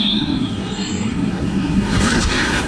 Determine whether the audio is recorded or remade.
remade